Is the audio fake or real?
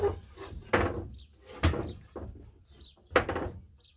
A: real